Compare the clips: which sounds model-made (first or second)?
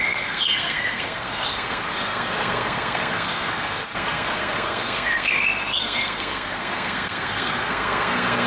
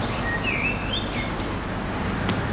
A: first